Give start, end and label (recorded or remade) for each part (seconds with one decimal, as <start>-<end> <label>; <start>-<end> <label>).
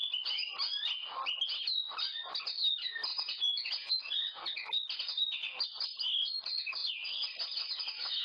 0.0-3.1 recorded; 3.1-3.9 remade; 3.9-8.2 recorded